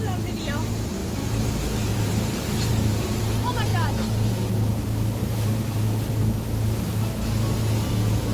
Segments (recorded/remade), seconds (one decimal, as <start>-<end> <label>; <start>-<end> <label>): 0.0-1.0 recorded; 1.0-1.5 remade; 1.5-1.9 recorded; 1.9-3.2 remade; 3.2-5.2 recorded; 5.2-6.0 remade; 6.0-8.3 recorded